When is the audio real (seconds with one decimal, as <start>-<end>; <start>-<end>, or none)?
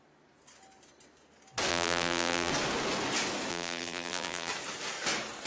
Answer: 0.0-1.7; 2.5-3.5; 4.5-5.5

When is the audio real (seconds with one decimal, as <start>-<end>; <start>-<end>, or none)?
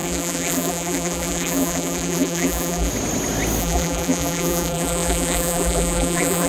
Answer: 2.9-3.6